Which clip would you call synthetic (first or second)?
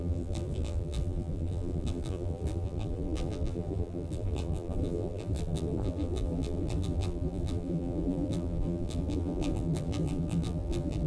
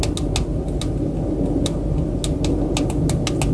first